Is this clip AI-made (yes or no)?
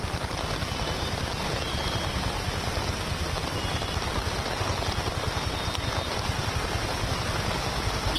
no